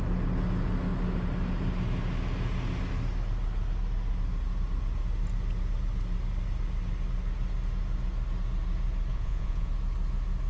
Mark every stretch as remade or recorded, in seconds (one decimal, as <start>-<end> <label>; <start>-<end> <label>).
0.0-9.1 recorded; 9.1-9.7 remade; 9.7-10.5 recorded